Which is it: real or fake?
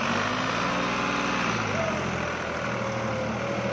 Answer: real